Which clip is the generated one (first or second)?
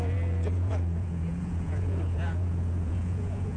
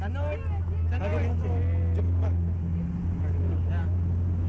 first